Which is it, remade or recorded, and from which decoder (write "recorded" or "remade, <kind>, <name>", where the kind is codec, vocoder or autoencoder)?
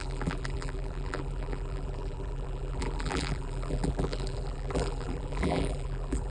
remade, vocoder, BigVGAN v2